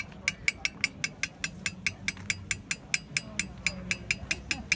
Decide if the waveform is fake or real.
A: real